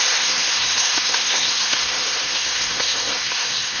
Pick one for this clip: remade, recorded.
remade